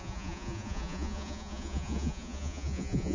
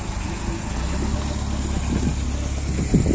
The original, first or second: second